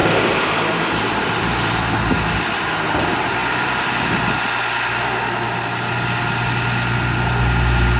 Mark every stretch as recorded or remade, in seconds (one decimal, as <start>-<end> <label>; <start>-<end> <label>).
0.0-2.1 remade; 2.1-3.4 recorded; 3.4-3.9 remade; 3.9-8.0 recorded